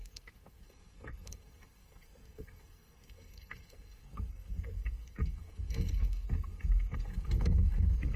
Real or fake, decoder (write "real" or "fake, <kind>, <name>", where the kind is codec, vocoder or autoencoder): fake, codec, SNAC